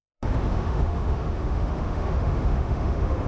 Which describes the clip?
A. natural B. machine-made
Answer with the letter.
B